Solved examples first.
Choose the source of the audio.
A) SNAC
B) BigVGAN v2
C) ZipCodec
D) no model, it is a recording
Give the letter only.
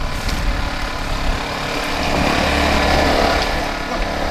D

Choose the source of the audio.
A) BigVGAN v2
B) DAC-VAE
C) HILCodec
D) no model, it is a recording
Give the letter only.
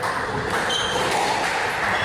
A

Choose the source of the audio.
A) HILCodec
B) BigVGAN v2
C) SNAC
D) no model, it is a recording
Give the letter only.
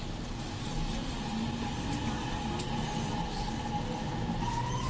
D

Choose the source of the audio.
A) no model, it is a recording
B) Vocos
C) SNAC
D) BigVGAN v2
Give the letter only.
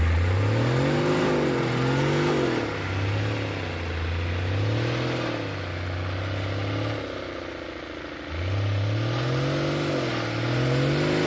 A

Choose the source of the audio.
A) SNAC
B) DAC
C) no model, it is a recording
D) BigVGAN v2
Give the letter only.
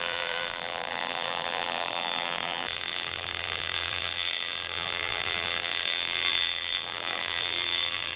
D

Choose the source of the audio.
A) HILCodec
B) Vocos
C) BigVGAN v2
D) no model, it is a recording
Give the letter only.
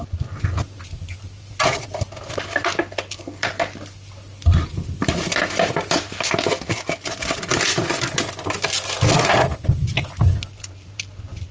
D